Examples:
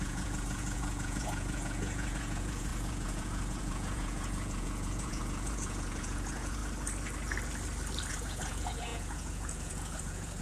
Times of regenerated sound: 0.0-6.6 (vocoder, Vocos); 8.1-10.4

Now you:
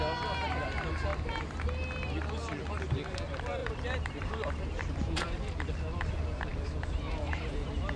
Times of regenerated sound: 3.6-5.4 (vocoder, BigVGAN v2)

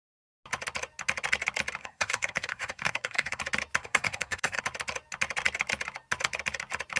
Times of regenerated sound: 1.8-3.4 (codec, SNAC); 3.8-4.6

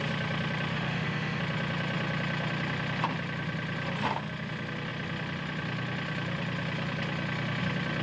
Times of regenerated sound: 0.7-1.4 (autoencoder, DAC-VAE)